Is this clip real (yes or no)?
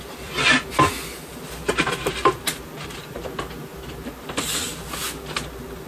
yes